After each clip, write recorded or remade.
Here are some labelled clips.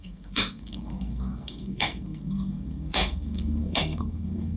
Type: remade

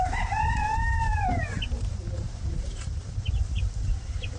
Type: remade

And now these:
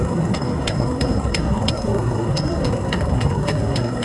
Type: remade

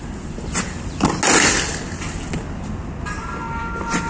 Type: recorded